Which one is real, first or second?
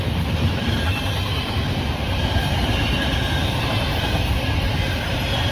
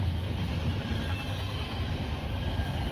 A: second